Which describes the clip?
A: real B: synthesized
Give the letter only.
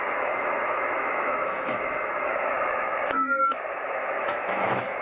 B